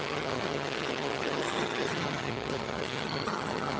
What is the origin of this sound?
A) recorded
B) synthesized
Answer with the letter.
B